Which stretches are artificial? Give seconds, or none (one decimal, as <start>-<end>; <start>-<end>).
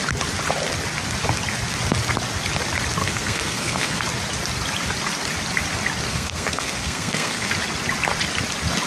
3.0-4.0; 6.1-7.5